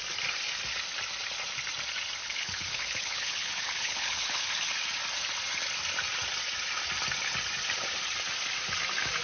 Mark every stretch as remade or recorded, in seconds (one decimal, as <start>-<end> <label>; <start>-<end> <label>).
0.0-2.2 recorded; 2.2-4.4 remade; 4.4-9.2 recorded